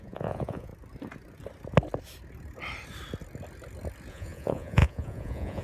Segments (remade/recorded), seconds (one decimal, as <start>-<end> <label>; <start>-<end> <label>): 0.0-0.7 remade; 0.7-4.1 recorded; 4.1-5.6 remade